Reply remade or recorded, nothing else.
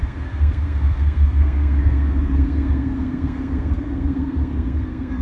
remade